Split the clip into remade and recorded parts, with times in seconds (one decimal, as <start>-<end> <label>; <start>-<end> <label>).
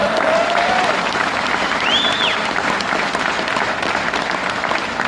0.0-5.1 recorded